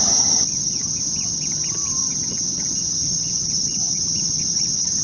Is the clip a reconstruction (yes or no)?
yes